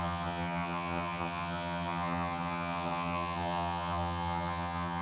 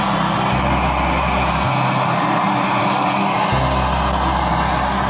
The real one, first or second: second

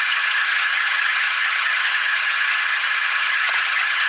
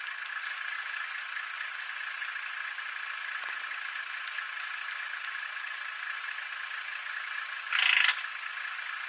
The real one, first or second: second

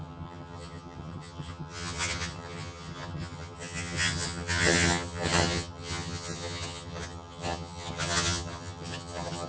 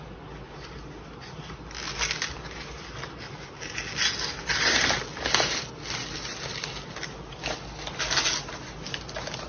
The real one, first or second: second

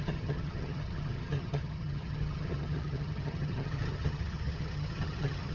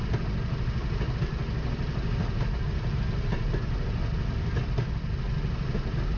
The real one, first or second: second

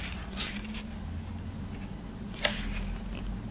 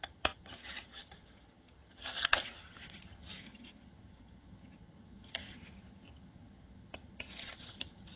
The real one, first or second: first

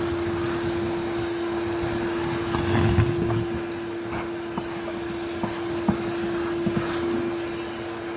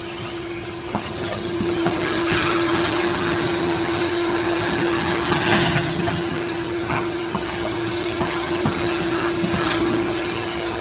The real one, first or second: first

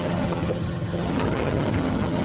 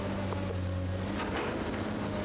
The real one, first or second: second